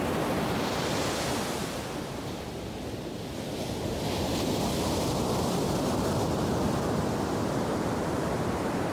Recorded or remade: recorded